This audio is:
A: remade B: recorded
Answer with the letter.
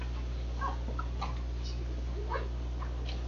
B